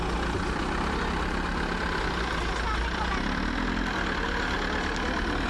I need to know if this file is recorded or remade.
recorded